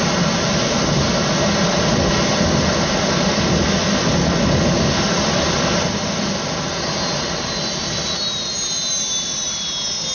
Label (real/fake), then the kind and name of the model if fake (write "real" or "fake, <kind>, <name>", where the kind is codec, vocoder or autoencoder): real